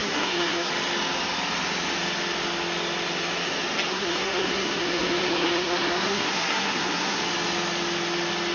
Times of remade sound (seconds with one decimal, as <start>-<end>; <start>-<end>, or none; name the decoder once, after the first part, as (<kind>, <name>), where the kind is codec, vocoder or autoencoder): 0.0-0.7 (codec, SNAC); 3.9-7.2